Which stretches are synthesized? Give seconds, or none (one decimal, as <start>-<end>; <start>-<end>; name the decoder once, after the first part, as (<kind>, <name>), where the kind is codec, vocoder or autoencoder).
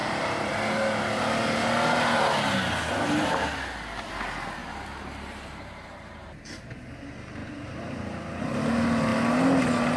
0.0-0.5 (vocoder, BigVGAN v2); 4.6-6.5; 7.4-8.4